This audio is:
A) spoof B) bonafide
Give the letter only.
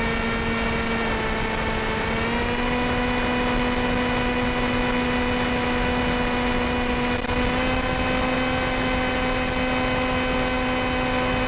B